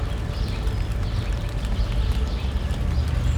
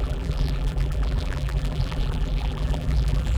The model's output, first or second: second